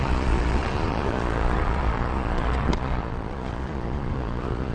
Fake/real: fake